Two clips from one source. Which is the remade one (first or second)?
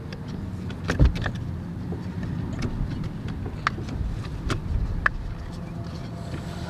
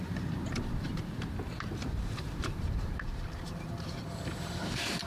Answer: second